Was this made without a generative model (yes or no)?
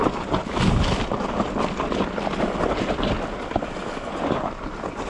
yes